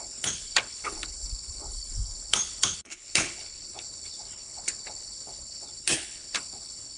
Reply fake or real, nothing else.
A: fake